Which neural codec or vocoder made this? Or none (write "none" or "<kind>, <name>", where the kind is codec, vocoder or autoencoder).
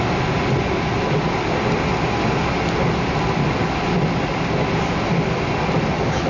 none